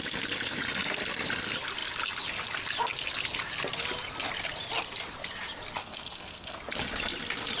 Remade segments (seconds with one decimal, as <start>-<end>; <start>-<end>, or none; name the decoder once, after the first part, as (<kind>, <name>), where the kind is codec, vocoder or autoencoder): 5.8-6.6 (codec, SNAC)